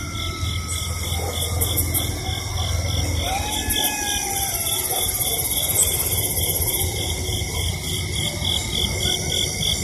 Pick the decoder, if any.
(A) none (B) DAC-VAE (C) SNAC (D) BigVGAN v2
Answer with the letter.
A